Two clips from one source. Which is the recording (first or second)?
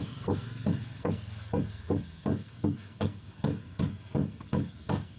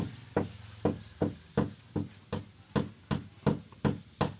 second